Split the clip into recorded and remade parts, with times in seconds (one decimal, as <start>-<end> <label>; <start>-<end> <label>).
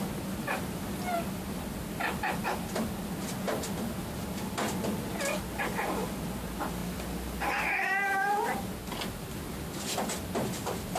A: 0.0-11.0 recorded